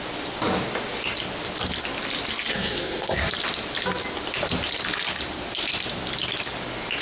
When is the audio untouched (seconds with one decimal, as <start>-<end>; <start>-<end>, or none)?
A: 0.0-2.5; 3.3-7.0